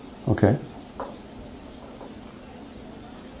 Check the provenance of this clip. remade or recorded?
recorded